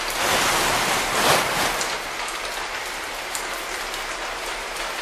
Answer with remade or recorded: recorded